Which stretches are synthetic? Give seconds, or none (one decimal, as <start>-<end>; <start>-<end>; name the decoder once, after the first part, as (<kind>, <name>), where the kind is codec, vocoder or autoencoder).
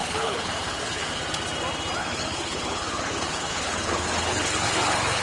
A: 0.0-1.2 (codec, HILCodec); 2.0-5.2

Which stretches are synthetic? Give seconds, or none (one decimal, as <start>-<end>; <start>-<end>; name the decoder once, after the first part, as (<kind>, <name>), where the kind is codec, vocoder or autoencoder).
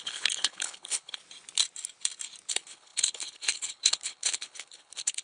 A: 0.0-1.2 (codec, HILCodec); 2.5-5.2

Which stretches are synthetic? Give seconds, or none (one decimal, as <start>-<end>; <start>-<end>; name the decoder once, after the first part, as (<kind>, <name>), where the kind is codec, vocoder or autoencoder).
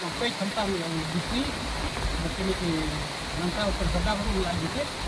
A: none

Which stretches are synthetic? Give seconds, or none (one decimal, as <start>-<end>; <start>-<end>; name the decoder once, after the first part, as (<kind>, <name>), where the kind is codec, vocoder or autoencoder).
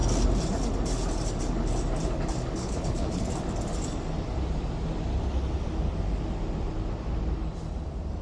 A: 2.6-3.2 (codec, HILCodec)